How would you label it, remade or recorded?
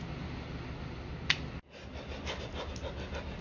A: recorded